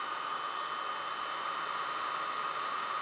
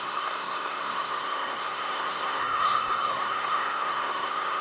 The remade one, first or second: second